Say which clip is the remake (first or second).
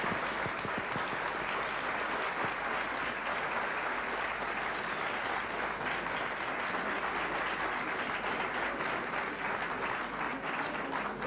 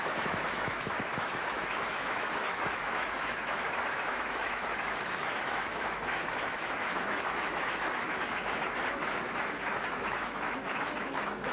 second